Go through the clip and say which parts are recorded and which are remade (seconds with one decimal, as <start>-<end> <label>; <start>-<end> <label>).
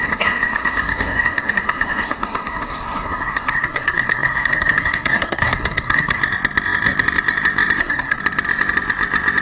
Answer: 0.0-6.2 remade; 6.2-7.8 recorded; 7.8-8.2 remade; 8.2-9.4 recorded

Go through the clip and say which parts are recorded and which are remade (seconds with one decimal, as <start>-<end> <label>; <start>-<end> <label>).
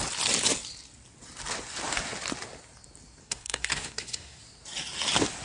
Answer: 0.0-3.2 recorded; 3.2-4.4 remade; 4.4-5.4 recorded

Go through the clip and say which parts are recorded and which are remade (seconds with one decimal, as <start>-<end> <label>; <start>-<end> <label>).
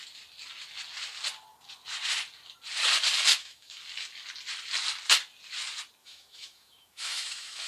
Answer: 0.0-3.3 recorded; 3.3-3.8 remade; 3.8-6.0 recorded; 6.0-7.7 remade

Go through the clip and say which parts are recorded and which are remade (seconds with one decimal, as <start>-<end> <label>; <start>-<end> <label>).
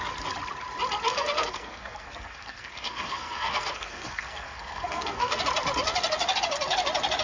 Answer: 0.0-1.1 recorded; 1.1-5.4 remade; 5.4-7.2 recorded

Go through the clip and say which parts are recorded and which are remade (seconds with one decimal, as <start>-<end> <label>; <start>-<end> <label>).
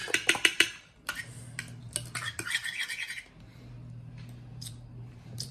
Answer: 0.0-5.5 recorded